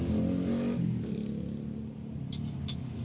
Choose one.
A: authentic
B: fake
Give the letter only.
A